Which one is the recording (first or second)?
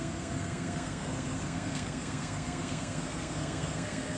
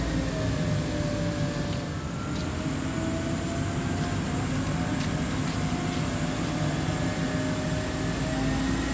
second